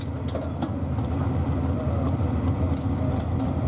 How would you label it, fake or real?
real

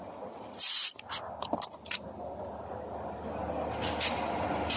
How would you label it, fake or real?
real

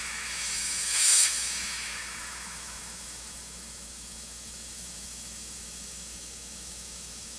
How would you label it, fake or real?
fake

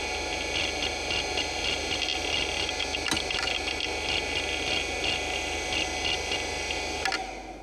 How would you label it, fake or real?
real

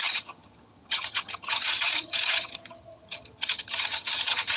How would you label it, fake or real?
fake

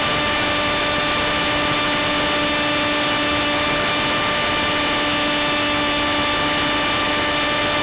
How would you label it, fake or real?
real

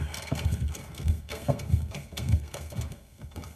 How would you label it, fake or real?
fake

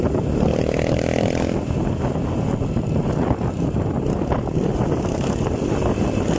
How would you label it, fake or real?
real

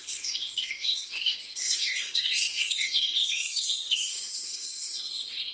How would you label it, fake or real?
fake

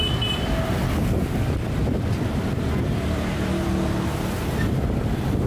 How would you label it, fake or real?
real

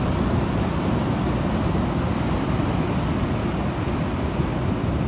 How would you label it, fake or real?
real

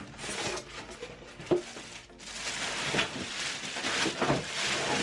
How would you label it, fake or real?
real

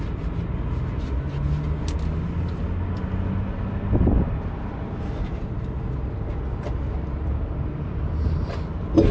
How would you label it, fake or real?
real